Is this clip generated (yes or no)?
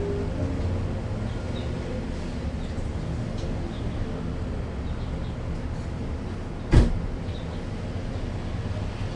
no